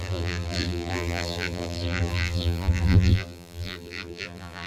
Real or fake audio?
fake